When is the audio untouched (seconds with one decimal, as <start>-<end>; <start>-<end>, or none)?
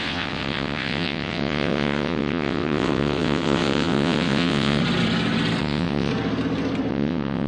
4.8-5.6; 6.1-6.9